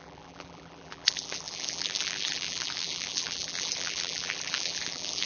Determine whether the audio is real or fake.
fake